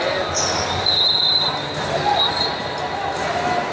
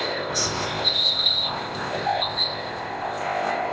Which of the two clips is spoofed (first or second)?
second